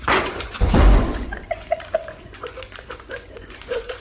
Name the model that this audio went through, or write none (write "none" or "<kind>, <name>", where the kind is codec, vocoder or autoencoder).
vocoder, Vocos